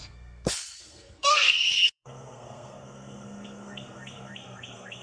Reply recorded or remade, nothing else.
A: remade